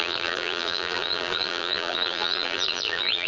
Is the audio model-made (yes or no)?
yes